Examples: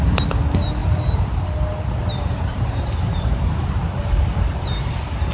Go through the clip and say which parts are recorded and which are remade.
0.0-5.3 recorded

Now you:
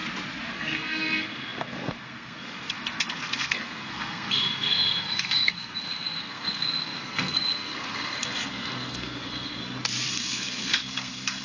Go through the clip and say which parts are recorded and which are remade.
0.0-0.5 recorded; 0.5-9.6 remade; 9.6-10.1 recorded; 10.1-11.4 remade

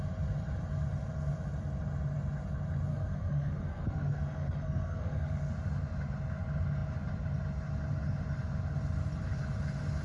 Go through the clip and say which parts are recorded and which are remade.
0.0-2.9 recorded; 2.9-5.5 remade; 5.5-10.0 recorded

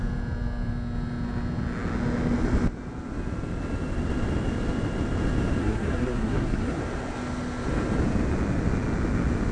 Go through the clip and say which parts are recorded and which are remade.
0.0-5.6 recorded; 5.6-6.8 remade; 6.8-9.5 recorded

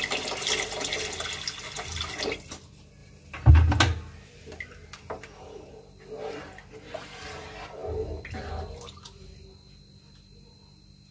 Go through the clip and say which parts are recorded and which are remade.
0.0-11.1 recorded